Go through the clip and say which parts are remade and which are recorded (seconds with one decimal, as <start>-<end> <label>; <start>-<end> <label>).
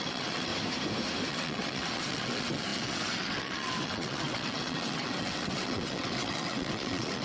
0.0-0.5 remade; 0.5-1.3 recorded; 1.3-7.2 remade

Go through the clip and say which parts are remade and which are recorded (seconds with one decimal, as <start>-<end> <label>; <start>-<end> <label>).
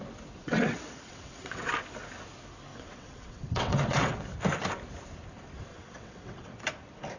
0.0-0.4 recorded; 0.4-1.7 remade; 1.7-2.7 recorded; 2.7-4.2 remade; 4.2-5.7 recorded; 5.7-6.6 remade; 6.6-7.2 recorded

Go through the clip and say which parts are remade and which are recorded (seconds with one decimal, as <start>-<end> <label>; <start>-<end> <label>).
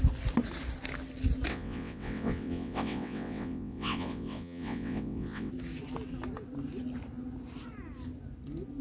0.0-1.5 recorded; 1.5-5.5 remade; 5.5-8.8 recorded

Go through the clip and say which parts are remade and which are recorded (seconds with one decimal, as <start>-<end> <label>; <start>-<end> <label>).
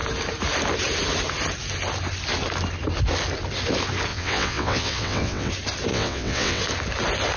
0.0-4.1 recorded; 4.1-5.5 remade; 5.5-5.9 recorded; 5.9-6.6 remade; 6.6-7.4 recorded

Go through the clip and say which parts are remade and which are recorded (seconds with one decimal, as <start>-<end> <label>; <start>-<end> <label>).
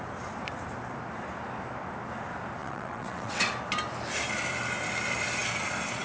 0.0-2.6 recorded; 2.6-3.5 remade; 3.5-6.0 recorded